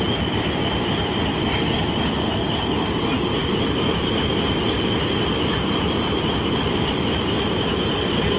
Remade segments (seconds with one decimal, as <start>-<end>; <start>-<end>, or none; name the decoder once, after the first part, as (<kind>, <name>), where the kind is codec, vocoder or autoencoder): none